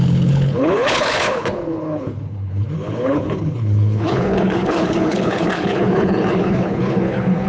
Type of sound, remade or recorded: remade